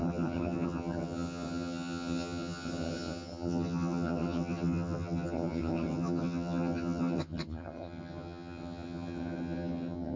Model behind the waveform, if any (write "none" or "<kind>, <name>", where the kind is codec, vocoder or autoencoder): vocoder, HiFi-GAN